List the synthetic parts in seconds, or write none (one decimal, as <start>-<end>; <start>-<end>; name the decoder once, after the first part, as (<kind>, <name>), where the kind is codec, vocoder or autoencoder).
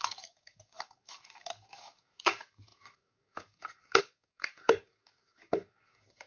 0.0-6.3 (codec, DAC)